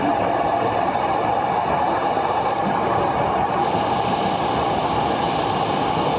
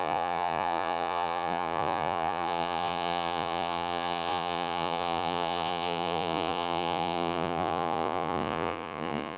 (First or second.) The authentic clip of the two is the first